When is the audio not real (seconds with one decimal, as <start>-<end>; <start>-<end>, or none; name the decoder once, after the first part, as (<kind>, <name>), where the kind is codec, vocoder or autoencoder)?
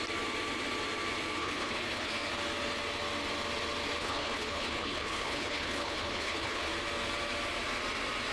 1.4-2.1 (codec, HILCodec); 4.0-6.7